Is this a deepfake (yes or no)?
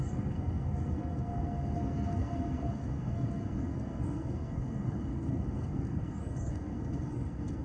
yes